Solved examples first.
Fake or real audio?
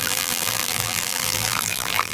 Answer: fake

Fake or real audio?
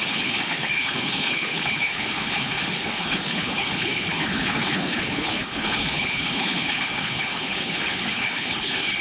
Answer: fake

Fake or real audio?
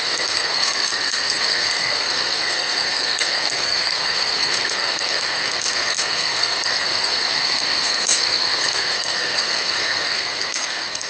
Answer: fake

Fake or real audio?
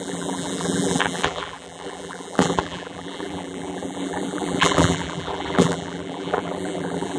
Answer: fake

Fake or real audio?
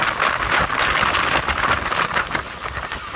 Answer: real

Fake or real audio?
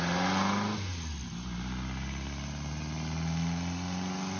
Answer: real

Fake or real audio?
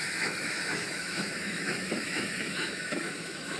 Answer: fake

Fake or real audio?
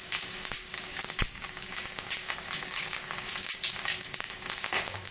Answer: fake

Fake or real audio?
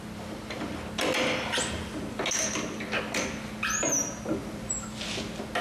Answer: real